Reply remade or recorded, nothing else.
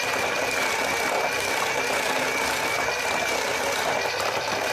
recorded